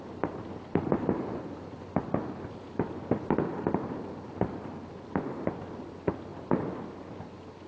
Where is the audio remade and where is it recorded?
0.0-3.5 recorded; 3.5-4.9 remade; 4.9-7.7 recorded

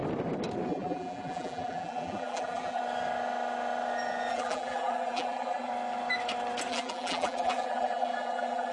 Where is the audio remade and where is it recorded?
0.0-0.7 recorded; 0.7-2.8 remade; 2.8-4.3 recorded; 4.3-5.7 remade; 5.7-6.7 recorded; 6.7-8.7 remade

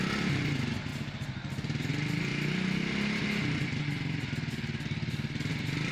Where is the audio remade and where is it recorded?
0.0-5.9 recorded

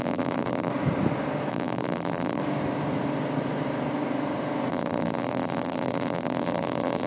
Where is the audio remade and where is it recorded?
0.0-0.7 remade; 0.7-1.5 recorded; 1.5-2.4 remade; 2.4-4.7 recorded; 4.7-7.1 remade

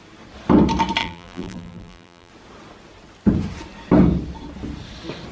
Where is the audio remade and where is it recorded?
0.0-1.0 recorded; 1.0-2.3 remade; 2.3-5.3 recorded